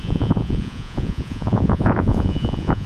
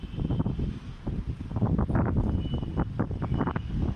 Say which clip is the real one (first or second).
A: second